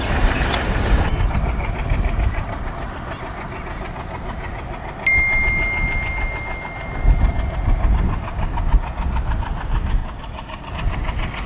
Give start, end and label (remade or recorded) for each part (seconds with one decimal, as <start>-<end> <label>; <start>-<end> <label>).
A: 0.0-1.1 recorded; 1.1-2.7 remade; 2.7-10.0 recorded; 10.0-10.7 remade; 10.7-11.5 recorded